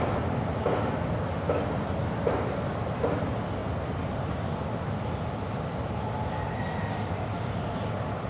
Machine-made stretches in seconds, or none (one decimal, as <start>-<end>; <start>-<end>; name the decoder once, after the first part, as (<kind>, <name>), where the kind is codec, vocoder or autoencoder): none